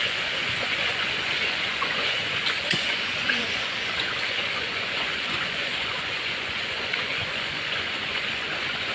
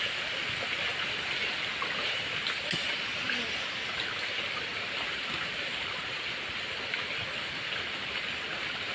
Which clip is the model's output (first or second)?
first